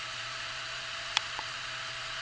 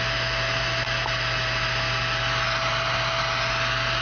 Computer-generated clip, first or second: first